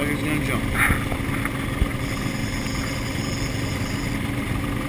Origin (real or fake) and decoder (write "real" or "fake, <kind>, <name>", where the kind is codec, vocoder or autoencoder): real